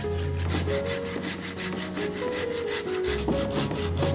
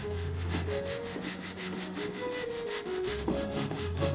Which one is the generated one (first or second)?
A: second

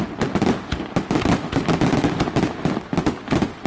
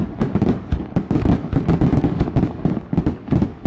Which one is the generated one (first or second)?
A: second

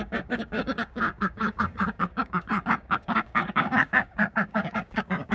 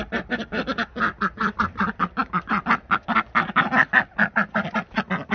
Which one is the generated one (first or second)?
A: first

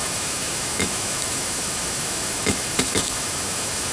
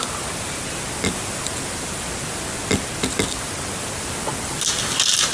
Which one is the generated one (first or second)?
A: first